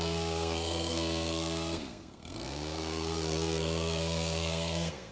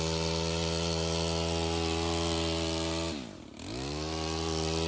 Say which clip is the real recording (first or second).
second